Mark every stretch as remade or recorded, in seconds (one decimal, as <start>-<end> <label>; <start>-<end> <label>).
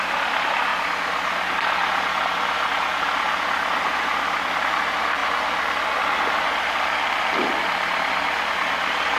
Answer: 0.0-0.7 remade; 0.7-4.7 recorded; 4.7-5.2 remade; 5.2-6.0 recorded; 6.0-9.2 remade